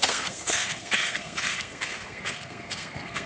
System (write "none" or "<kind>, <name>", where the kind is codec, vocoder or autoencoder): codec, SNAC